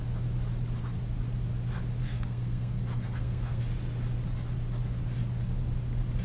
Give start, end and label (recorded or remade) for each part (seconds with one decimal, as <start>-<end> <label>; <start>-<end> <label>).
0.0-2.0 recorded; 2.0-3.6 remade; 3.6-6.2 recorded